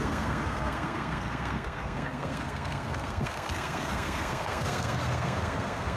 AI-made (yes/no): yes